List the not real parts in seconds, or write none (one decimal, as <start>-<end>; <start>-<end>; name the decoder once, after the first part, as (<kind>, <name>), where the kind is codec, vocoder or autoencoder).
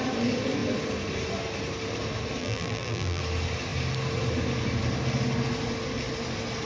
2.4-3.2 (vocoder, BigVGAN v2)